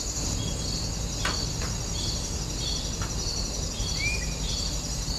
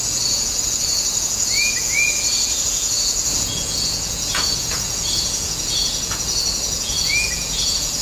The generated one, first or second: second